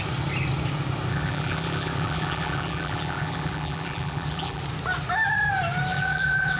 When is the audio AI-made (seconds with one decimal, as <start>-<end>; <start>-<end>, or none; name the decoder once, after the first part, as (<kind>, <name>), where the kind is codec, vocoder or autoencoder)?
1.1-4.6 (vocoder, BigVGAN v2); 5.9-6.6

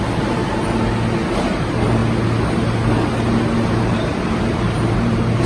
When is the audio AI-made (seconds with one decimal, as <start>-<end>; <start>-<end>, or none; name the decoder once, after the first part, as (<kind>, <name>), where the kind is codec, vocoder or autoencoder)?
0.0-0.4 (vocoder, BigVGAN v2); 1.5-2.0; 3.8-5.5

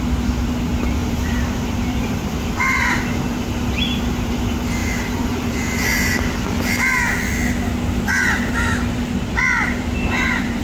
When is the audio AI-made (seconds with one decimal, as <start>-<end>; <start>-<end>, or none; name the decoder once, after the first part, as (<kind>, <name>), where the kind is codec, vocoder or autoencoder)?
1.0-3.0 (vocoder, BigVGAN v2); 4.8-6.6; 9.4-10.6